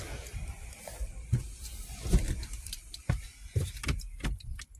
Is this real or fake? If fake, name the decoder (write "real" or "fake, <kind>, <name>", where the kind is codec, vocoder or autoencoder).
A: fake, vocoder, BigVGAN v2